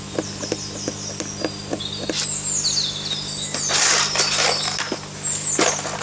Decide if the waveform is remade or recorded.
recorded